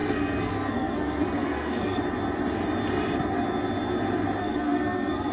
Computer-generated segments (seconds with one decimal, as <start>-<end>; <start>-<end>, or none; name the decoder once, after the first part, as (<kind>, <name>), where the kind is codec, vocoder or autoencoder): 0.0-2.0 (codec, SNAC); 4.4-5.3